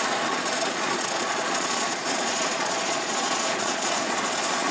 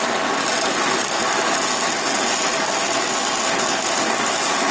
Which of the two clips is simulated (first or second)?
first